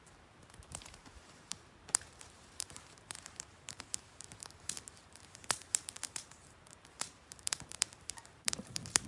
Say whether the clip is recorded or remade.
remade